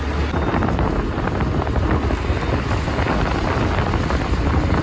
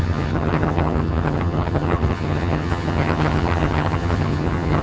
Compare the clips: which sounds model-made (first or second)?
second